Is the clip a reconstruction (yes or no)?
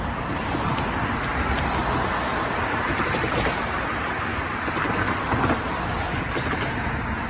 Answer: no